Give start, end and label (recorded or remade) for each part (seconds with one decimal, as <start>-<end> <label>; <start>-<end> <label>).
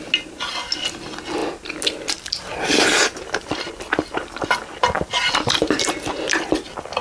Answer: 0.0-7.0 recorded